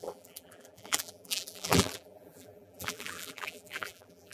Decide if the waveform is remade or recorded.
remade